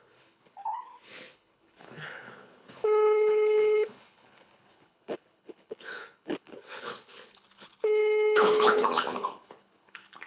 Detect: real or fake fake